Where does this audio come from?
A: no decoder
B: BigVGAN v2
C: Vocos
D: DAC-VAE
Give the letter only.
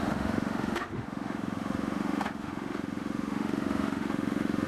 D